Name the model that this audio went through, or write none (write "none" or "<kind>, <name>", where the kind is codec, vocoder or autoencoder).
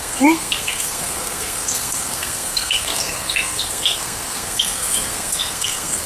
codec, SNAC